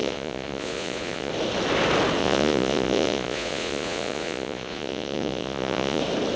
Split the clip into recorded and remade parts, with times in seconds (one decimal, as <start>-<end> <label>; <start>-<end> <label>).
0.0-1.3 remade; 1.3-2.2 recorded; 2.2-6.0 remade; 6.0-6.4 recorded